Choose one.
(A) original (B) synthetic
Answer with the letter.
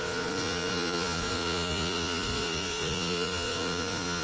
B